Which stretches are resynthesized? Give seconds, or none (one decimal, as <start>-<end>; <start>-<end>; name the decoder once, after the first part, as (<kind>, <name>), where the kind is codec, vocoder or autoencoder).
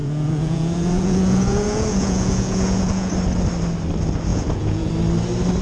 0.0-3.1 (vocoder, Vocos); 4.3-4.9